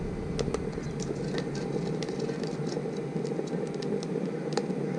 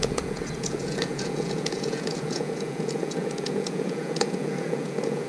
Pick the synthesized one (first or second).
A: second